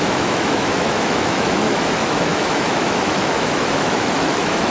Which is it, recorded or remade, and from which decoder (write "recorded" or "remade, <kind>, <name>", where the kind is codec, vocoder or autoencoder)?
remade, autoencoder, DAC-VAE